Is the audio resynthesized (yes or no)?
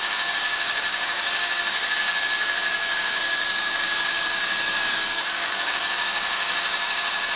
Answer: yes